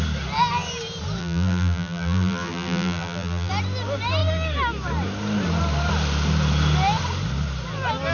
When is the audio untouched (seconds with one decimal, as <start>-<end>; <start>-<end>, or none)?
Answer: 0.0-1.2; 3.5-8.1